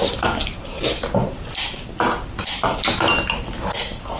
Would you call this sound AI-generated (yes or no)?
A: no